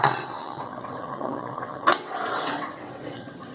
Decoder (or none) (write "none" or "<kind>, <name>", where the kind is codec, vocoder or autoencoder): vocoder, WaveNeXt